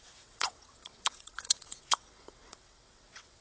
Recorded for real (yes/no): no